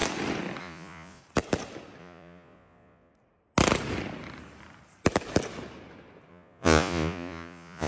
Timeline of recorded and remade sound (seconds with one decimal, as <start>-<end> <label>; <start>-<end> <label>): 0.0-0.6 recorded; 0.6-1.2 remade; 1.2-2.0 recorded; 2.0-3.1 remade; 3.1-6.3 recorded; 6.3-7.9 remade